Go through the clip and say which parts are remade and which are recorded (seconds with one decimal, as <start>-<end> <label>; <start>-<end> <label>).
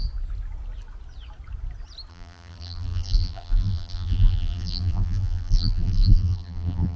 0.0-2.1 recorded; 2.1-7.0 remade